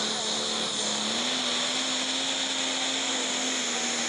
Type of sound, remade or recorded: recorded